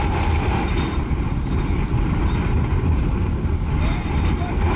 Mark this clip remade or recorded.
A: recorded